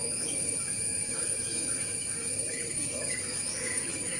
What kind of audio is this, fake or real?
fake